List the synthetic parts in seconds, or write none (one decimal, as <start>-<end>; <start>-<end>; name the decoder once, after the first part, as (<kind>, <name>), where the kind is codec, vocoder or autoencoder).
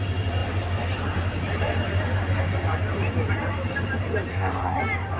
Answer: 4.3-4.8 (codec, SNAC)